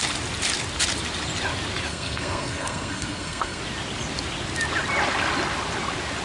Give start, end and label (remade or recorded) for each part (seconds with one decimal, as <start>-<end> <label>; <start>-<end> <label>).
0.0-1.9 recorded; 1.9-3.6 remade; 3.6-6.2 recorded